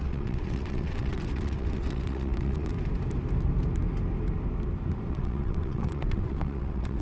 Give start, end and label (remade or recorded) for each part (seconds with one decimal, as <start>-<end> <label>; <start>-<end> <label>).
0.0-2.7 remade; 2.7-5.1 recorded; 5.1-7.0 remade